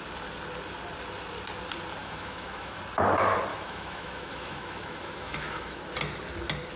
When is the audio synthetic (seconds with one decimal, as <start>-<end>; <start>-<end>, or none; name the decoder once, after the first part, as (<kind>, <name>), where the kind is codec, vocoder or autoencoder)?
2.0-2.8 (autoencoder, DAC-VAE); 3.5-5.8